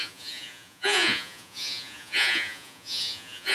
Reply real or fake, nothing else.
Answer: fake